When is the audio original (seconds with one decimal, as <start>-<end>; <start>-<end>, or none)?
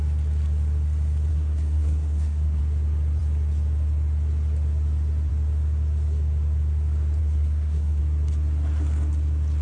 0.0-1.3; 2.6-7.2; 8.0-9.6